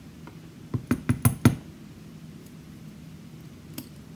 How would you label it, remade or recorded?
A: recorded